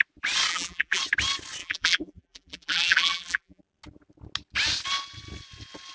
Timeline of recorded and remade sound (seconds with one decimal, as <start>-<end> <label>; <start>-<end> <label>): 0.0-0.5 recorded; 0.5-1.0 remade; 1.0-1.6 recorded; 1.6-3.6 remade; 3.6-5.9 recorded